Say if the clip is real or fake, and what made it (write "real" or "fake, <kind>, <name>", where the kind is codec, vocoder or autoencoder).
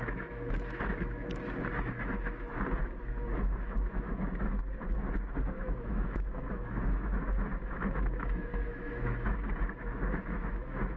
fake, autoencoder, DAC-VAE